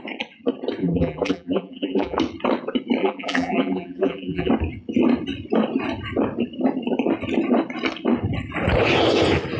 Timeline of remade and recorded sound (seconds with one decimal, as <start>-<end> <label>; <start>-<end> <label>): 0.0-0.8 recorded; 0.8-2.2 remade; 2.2-3.0 recorded; 3.0-4.5 remade; 4.5-9.6 recorded